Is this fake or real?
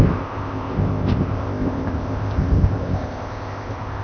fake